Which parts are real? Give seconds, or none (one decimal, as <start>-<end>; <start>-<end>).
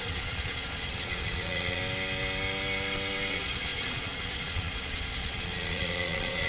1.8-3.3